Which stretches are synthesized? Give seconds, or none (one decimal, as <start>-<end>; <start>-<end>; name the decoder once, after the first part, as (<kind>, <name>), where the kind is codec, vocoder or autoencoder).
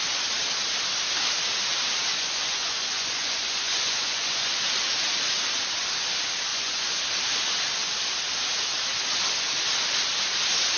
2.1-4.5 (vocoder, Vocos); 6.5-7.0